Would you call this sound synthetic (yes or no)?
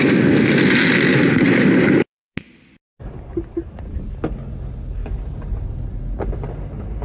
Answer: no